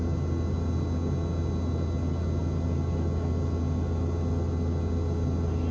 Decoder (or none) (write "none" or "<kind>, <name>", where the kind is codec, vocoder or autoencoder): none